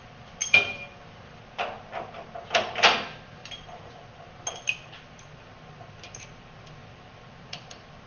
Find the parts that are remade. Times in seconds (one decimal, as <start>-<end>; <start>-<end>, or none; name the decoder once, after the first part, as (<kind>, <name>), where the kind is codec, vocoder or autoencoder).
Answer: 0.4-1.4 (vocoder, BigVGAN v2); 3.4-3.9; 6.8-7.3